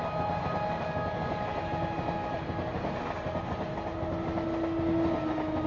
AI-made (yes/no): no